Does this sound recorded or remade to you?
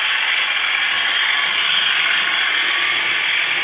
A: recorded